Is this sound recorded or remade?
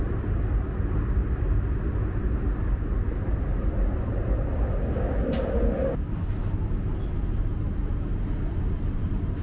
recorded